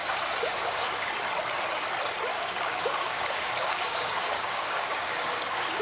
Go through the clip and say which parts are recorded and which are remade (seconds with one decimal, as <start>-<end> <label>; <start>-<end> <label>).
0.0-1.1 remade; 1.1-2.3 recorded; 2.3-5.8 remade

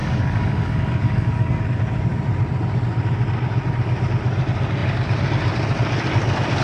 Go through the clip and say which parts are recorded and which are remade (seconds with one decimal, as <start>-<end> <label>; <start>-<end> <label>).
0.0-1.6 remade; 1.6-6.6 recorded

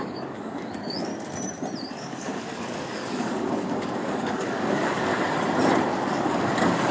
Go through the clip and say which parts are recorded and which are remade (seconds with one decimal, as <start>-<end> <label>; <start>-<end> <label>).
0.0-1.1 remade; 1.1-1.8 recorded; 1.8-5.1 remade; 5.1-5.9 recorded; 5.9-6.9 remade

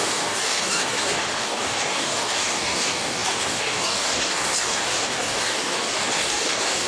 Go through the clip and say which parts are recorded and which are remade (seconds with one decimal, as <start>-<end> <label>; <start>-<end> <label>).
0.0-6.9 remade